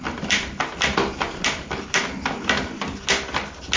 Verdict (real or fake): real